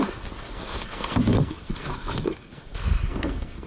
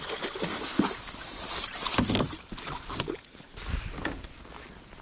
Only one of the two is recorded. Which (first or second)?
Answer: second